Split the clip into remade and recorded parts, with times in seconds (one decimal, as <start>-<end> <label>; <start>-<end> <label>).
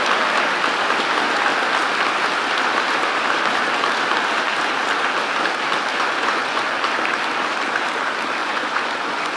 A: 0.0-5.9 recorded; 5.9-6.8 remade; 6.8-8.4 recorded; 8.4-9.4 remade